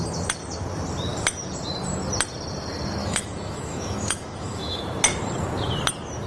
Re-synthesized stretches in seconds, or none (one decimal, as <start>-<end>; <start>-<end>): 3.0-4.8